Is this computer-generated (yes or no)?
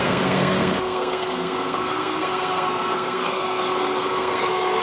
yes